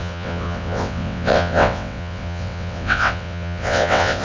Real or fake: fake